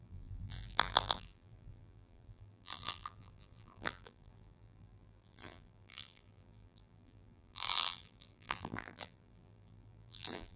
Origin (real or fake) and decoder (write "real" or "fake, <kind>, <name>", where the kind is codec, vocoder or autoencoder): fake, vocoder, BigVGAN v2